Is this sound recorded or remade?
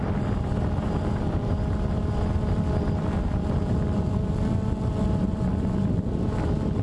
recorded